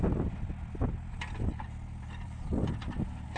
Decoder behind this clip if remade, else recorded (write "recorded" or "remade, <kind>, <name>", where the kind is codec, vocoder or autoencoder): recorded